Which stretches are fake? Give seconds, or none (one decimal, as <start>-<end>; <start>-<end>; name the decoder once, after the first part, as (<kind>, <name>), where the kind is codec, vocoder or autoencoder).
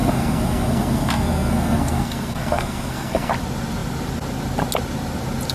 0.0-3.3 (codec, SNAC)